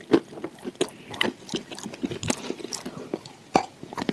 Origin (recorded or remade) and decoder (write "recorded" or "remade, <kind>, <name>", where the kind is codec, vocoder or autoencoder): recorded